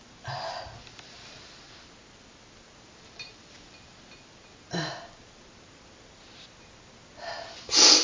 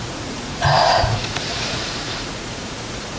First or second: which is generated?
second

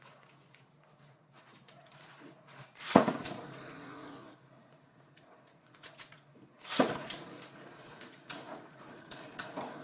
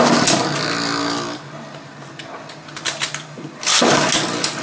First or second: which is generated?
first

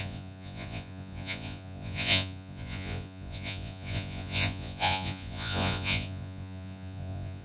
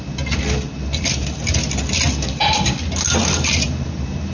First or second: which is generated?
first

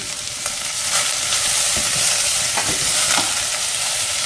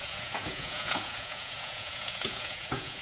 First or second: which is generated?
second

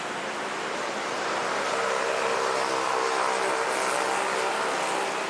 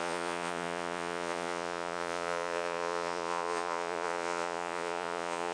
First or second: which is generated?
second